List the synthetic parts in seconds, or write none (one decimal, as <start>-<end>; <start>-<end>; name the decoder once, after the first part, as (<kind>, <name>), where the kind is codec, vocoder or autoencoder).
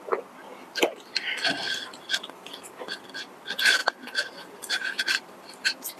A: 0.5-2.6 (vocoder, BigVGAN v2); 3.8-6.0